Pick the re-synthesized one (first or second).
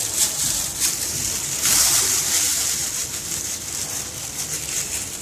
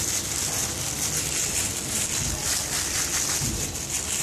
first